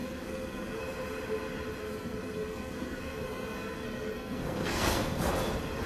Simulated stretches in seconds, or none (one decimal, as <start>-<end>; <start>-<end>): 0.0-0.8; 1.8-5.3